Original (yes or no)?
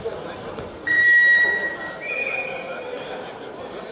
no